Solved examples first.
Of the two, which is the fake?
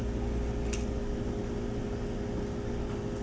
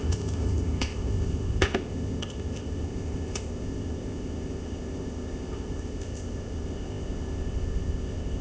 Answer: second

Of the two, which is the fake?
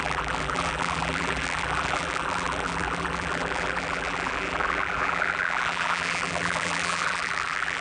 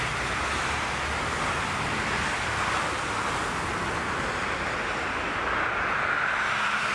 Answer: first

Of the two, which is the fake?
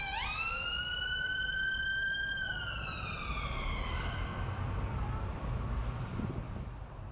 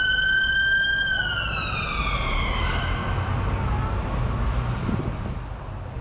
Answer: first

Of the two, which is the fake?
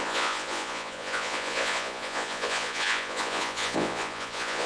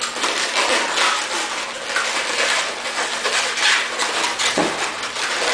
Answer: first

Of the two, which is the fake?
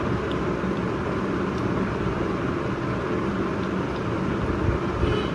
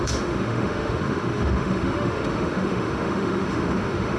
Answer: second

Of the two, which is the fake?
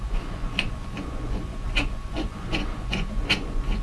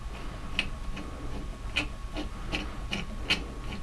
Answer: first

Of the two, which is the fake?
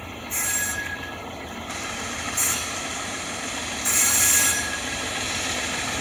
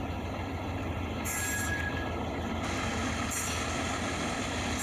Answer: first